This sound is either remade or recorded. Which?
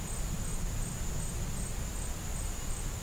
recorded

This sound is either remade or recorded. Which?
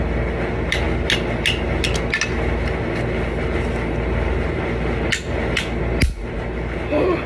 recorded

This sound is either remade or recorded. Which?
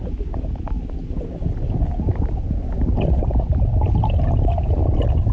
recorded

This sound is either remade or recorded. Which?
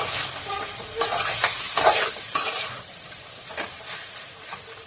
remade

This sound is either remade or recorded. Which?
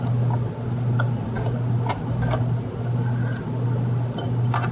recorded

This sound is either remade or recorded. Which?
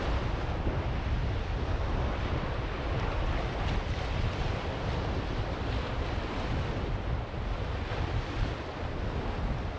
recorded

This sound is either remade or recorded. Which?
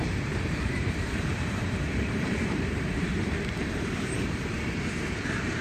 remade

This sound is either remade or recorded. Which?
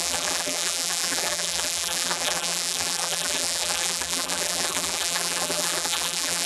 remade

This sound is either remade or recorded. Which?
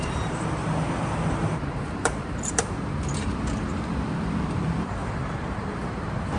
remade